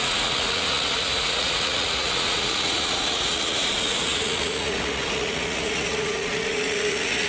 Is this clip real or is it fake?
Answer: fake